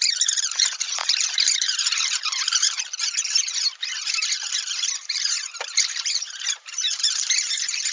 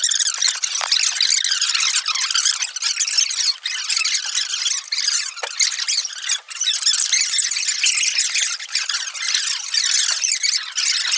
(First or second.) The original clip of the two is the second